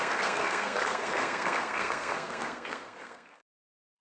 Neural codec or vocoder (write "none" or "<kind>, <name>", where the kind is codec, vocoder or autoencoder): codec, SNAC